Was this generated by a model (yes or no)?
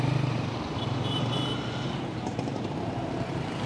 yes